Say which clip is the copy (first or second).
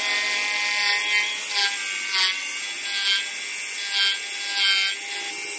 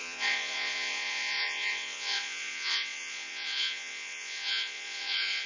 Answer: second